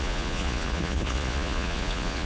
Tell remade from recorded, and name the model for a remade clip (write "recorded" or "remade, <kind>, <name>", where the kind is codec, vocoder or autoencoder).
remade, vocoder, Vocos